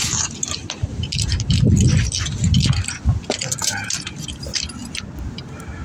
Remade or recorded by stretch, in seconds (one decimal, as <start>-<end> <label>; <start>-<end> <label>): 0.0-0.6 remade; 0.6-3.6 recorded; 3.6-4.8 remade; 4.8-5.3 recorded; 5.3-5.8 remade